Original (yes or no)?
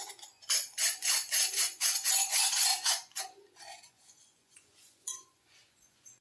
no